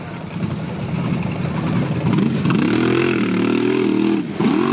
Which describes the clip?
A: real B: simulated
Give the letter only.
A